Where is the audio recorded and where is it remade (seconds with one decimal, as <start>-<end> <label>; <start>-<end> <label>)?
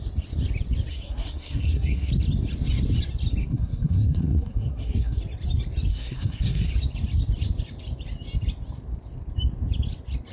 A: 0.0-0.9 recorded; 0.9-2.1 remade; 2.1-3.4 recorded; 3.4-5.2 remade; 5.2-5.9 recorded; 5.9-6.7 remade; 6.7-10.3 recorded